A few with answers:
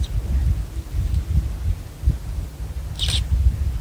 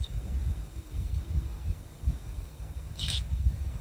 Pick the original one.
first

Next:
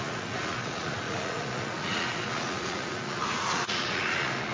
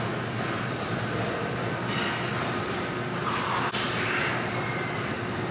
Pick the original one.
second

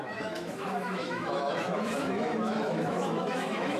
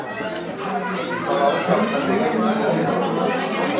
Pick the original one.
second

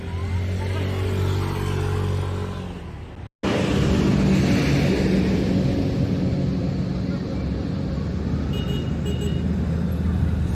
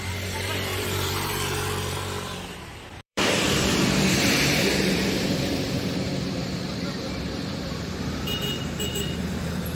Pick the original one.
first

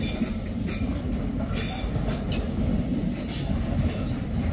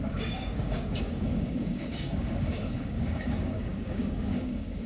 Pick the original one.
first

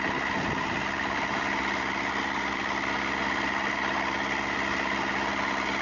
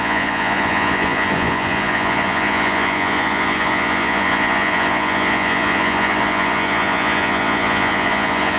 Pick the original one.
first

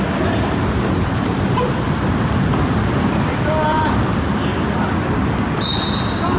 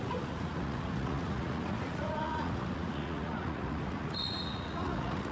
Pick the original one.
first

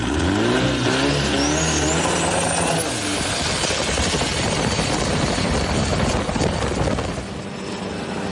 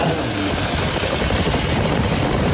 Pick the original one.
first